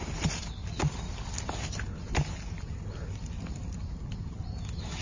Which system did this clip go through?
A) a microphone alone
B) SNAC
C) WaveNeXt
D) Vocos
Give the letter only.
A